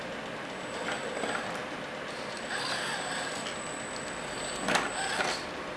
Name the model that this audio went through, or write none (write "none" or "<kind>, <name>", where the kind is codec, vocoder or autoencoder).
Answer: none